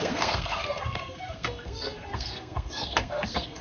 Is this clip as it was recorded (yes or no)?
no